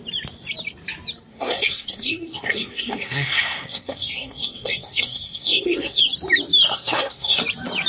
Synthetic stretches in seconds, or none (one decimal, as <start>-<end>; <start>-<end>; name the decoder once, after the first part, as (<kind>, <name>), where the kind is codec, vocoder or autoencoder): 1.3-6.0 (codec, SNAC); 6.7-7.4